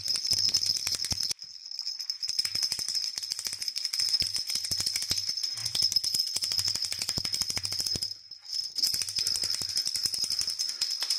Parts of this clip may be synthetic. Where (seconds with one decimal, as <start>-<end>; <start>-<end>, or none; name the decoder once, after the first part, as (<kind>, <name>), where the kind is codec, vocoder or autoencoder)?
none